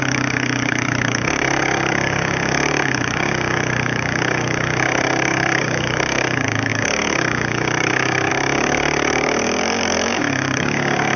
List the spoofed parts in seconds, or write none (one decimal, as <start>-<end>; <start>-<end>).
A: 0.0-11.2